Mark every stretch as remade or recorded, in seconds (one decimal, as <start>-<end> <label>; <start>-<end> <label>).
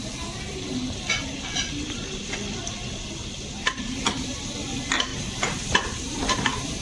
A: 0.0-5.1 recorded; 5.1-6.8 remade